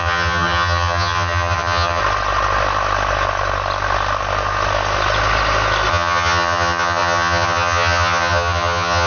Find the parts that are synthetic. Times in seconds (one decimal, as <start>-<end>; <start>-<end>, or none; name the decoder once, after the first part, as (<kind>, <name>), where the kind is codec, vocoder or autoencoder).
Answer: 0.0-2.0 (vocoder, HiFi-GAN); 5.9-9.1